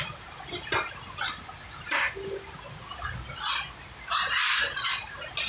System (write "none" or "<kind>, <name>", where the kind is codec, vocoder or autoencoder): none